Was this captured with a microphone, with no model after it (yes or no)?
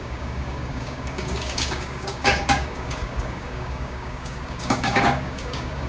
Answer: no